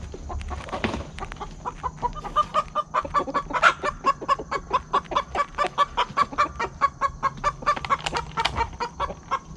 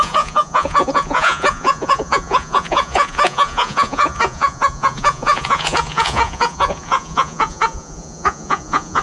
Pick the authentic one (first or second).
first